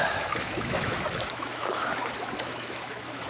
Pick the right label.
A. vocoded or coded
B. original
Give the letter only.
A